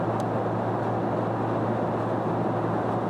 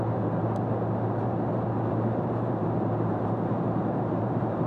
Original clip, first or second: first